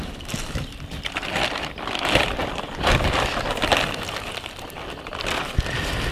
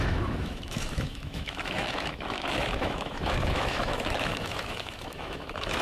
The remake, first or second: second